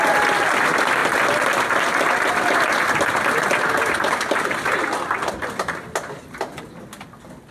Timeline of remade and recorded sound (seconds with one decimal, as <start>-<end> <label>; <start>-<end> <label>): 0.0-7.5 recorded